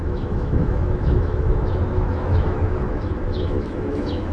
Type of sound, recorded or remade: remade